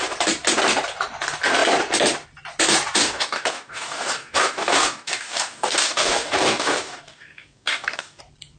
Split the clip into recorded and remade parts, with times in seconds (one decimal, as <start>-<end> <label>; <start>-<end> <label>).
0.0-3.0 recorded; 3.0-8.2 remade; 8.2-8.6 recorded